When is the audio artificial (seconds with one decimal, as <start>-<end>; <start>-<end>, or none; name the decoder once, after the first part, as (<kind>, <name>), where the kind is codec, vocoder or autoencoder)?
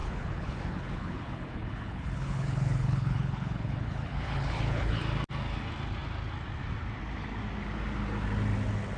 0.0-5.0 (codec, HILCodec)